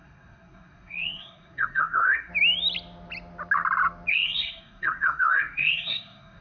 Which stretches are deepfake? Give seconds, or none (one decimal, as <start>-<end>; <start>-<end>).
0.0-2.3; 4.1-6.4